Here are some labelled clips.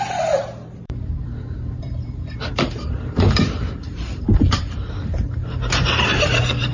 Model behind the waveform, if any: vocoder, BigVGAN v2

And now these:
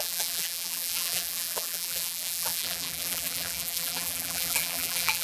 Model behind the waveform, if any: vocoder, BigVGAN v2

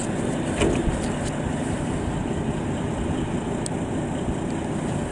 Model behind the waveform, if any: none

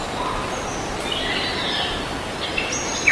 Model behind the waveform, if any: none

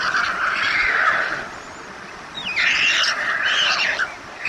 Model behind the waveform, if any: none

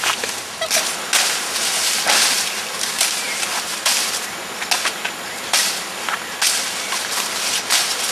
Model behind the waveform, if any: none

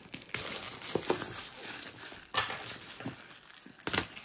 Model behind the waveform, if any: none